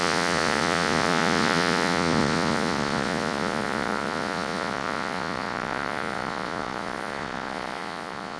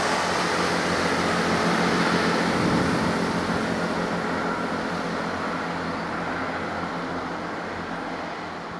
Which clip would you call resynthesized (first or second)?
first